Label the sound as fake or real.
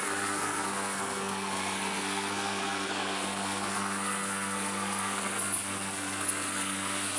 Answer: fake